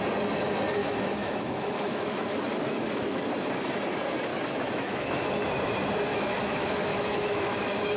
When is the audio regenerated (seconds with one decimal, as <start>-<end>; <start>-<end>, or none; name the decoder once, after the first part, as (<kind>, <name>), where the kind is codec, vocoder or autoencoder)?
0.8-3.2 (autoencoder, DAC-VAE); 4.3-5.3; 6.1-8.0